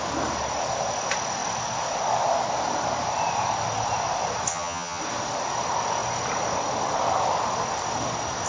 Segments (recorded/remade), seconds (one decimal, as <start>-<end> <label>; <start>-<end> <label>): 0.0-4.5 recorded; 4.5-5.0 remade; 5.0-8.5 recorded